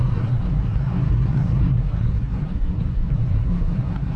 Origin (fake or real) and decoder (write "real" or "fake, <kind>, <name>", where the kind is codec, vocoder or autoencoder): fake, codec, SNAC